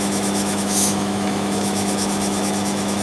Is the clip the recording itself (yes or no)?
no